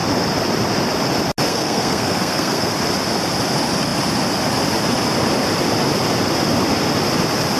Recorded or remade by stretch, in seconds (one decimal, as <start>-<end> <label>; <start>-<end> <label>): 0.0-1.5 recorded; 1.5-2.7 remade; 2.7-7.6 recorded